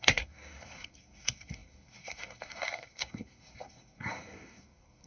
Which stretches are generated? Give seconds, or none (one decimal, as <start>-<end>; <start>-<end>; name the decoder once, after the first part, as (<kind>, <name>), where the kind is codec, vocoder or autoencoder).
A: 0.0-5.1 (codec, SNAC)